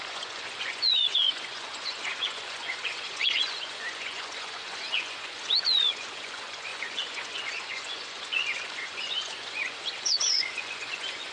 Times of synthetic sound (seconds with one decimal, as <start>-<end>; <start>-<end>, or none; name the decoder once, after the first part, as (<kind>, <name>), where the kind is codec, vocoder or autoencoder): 0.0-11.3 (vocoder, Vocos)